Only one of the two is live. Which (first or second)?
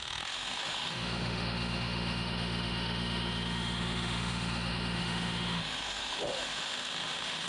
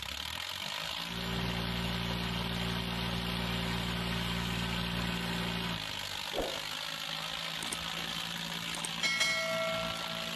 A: second